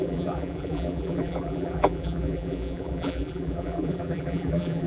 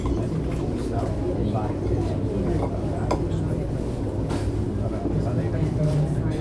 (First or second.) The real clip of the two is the second